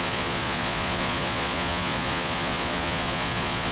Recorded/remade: remade